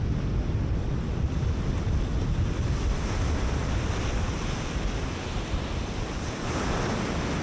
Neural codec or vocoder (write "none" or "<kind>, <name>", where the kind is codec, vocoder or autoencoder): none